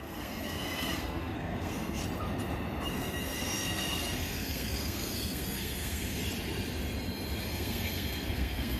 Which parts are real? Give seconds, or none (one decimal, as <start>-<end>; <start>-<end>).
2.0-2.9; 6.2-7.4